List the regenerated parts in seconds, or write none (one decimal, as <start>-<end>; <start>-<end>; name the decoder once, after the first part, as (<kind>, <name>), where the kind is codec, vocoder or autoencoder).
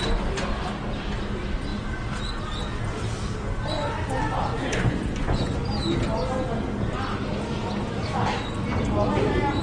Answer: 4.5-5.6 (vocoder, Vocos)